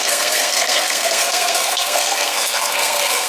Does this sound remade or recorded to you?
remade